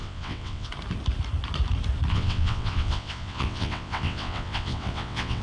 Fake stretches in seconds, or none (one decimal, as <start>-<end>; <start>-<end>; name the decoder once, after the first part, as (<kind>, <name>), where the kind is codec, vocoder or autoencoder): 0.0-0.7 (vocoder, WaveNeXt); 2.1-5.4